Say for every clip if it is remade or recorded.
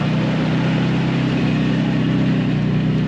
remade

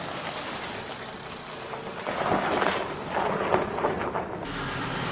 recorded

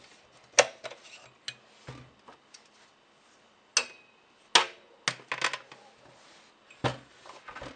recorded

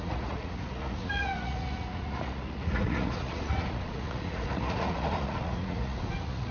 remade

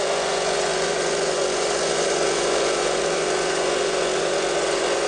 remade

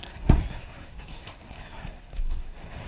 remade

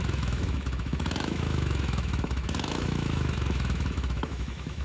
remade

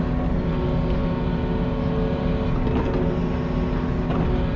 recorded